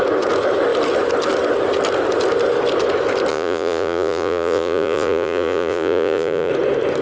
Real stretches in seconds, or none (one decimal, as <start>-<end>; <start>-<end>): 0.0-3.3; 6.5-7.0